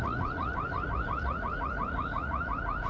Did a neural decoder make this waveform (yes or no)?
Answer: yes